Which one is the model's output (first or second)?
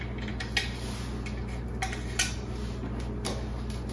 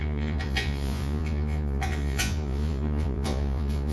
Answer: second